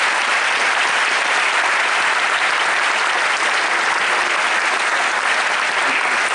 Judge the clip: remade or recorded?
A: recorded